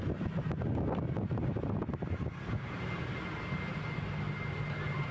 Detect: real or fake real